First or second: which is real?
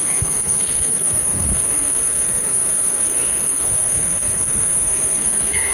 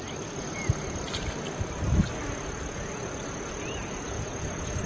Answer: second